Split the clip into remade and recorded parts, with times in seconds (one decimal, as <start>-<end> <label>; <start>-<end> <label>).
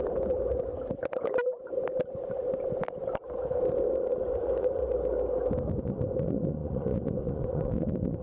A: 0.0-4.0 recorded; 4.0-4.8 remade; 4.8-5.8 recorded; 5.8-8.2 remade